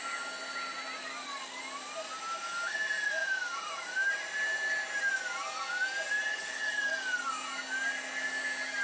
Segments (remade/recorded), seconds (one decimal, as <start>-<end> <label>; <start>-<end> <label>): 0.0-1.0 recorded; 1.0-1.6 remade; 1.6-6.3 recorded; 6.3-7.3 remade; 7.3-8.8 recorded